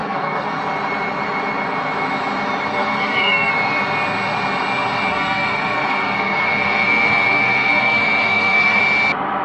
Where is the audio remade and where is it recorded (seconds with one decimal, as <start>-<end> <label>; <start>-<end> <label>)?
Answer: 0.0-0.6 remade; 0.6-2.7 recorded; 2.7-3.5 remade; 3.5-5.1 recorded; 5.1-8.8 remade; 8.8-9.4 recorded